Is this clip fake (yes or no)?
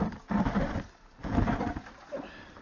no